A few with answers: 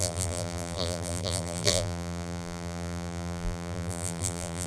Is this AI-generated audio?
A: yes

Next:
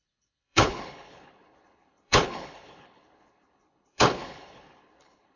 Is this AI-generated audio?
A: yes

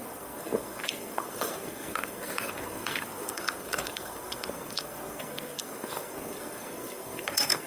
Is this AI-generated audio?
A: yes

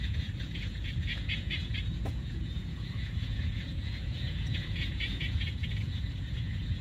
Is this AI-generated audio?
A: yes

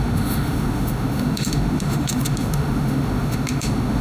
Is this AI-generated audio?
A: yes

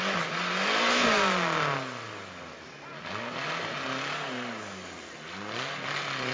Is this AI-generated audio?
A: no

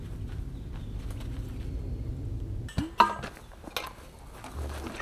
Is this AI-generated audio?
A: no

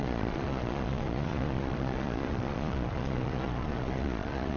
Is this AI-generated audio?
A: yes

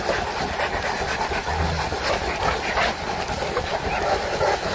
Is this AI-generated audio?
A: no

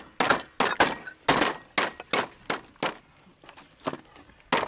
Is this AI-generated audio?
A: no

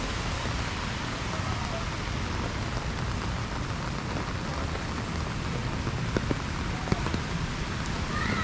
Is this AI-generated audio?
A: no